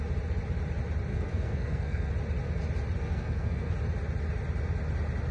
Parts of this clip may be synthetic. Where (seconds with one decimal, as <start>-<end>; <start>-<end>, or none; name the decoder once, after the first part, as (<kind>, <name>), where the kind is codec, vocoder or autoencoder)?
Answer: 1.1-2.1 (codec, SNAC); 3.0-3.7